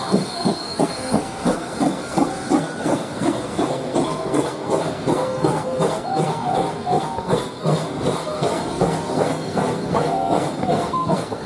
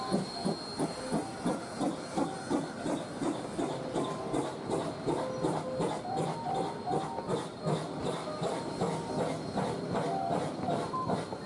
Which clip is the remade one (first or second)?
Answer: first